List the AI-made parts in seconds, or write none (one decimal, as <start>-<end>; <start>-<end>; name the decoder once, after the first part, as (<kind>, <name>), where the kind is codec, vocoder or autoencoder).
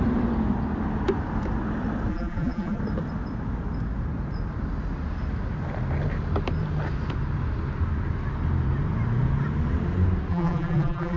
2.1-2.8 (vocoder, BigVGAN v2); 10.3-11.2